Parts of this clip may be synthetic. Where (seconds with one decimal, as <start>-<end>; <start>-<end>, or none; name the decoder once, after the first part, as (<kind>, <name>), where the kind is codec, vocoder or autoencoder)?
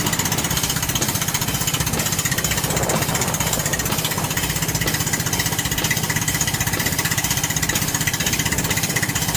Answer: 0.0-1.4 (vocoder, BigVGAN v2); 3.0-3.7; 6.2-9.4